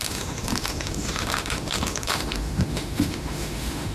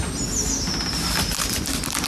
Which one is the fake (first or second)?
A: first